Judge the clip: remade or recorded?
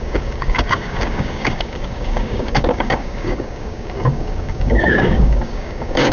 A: remade